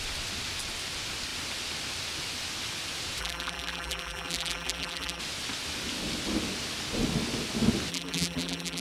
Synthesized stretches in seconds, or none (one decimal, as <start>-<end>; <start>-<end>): 3.2-5.2; 7.9-8.8